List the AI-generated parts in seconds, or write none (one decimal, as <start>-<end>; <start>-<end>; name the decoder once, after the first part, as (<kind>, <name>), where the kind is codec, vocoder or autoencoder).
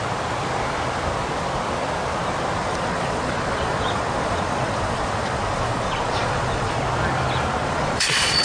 2.6-6.8 (vocoder, Vocos); 7.6-8.4